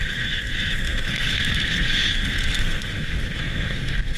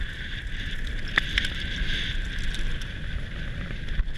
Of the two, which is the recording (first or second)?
second